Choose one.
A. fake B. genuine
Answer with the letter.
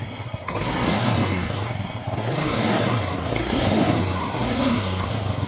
A